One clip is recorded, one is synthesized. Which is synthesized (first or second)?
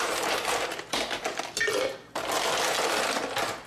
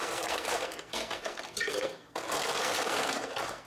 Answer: second